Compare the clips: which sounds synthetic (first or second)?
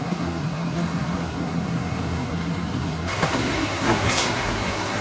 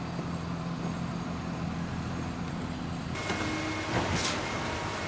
first